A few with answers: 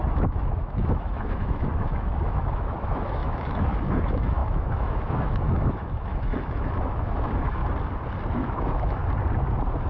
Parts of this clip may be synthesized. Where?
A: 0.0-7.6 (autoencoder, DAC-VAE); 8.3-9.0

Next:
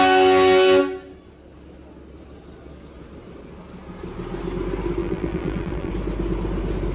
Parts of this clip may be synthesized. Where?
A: 5.0-5.9 (vocoder, BigVGAN v2)

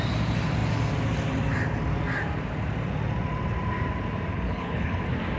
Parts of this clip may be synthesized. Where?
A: 4.3-5.0 (codec, HILCodec)

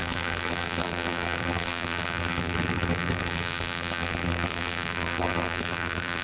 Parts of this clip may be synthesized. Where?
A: 0.0-6.2 (vocoder, BigVGAN v2)

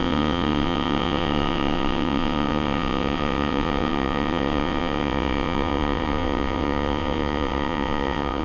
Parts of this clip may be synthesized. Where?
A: 0.0-8.4 (vocoder, WaveNeXt)

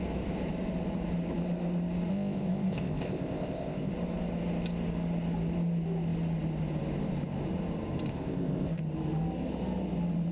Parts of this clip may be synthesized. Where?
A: 2.1-3.9 (codec, ZipCodec); 8.1-8.8

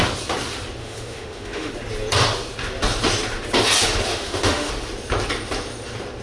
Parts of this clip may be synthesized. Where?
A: 0.8-1.7 (autoencoder, DAC-VAE); 4.1-4.7